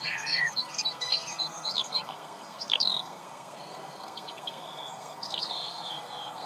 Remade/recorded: remade